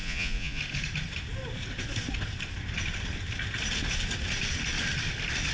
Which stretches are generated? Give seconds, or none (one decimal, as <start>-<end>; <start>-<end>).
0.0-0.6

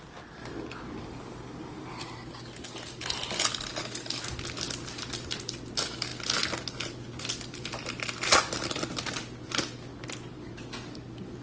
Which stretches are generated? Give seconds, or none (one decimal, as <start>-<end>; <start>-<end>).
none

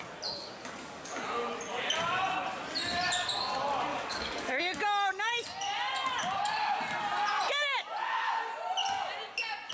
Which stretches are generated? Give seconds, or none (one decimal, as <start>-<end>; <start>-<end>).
0.4-1.2; 3.9-4.6

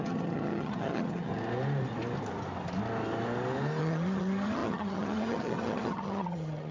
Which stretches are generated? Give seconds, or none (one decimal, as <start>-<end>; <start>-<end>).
0.0-1.3; 3.8-6.7

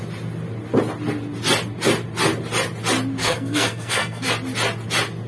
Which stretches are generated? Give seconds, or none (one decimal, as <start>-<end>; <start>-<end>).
3.2-4.3

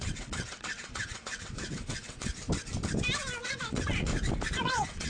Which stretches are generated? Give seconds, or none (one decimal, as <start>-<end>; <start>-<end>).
0.0-2.3; 3.4-4.1; 4.6-5.1

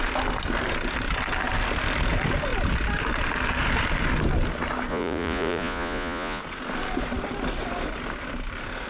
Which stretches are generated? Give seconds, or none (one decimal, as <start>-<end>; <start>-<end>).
4.9-6.4

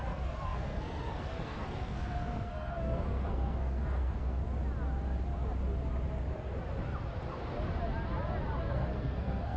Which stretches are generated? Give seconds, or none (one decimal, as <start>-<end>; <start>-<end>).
0.0-4.4; 8.7-9.6